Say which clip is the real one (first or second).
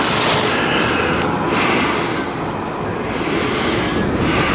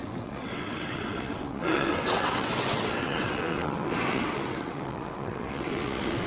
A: first